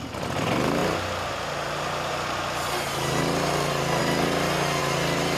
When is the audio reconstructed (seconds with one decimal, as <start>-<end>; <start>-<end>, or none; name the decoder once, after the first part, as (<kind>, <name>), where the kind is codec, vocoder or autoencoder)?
none